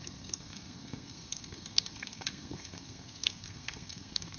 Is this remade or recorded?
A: remade